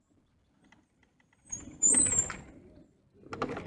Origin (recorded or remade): recorded